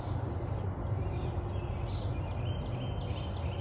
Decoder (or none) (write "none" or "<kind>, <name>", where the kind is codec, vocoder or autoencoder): none